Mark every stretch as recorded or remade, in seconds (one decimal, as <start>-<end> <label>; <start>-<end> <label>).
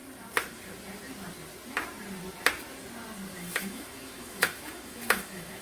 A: 0.0-3.3 recorded; 3.3-5.6 remade